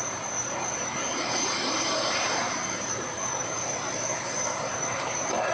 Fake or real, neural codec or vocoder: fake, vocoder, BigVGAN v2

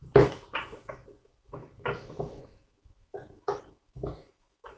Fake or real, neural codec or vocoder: fake, autoencoder, DAC-VAE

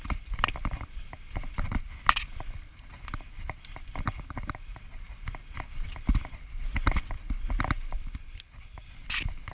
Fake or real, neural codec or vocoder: real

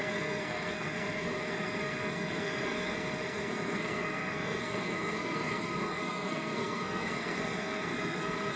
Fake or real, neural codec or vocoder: fake, codec, SNAC